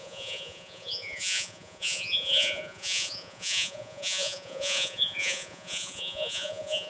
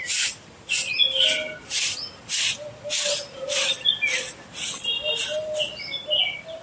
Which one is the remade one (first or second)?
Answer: first